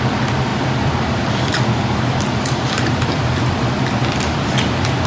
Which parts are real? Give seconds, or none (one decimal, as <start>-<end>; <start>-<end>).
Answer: 0.0-0.5; 3.4-4.0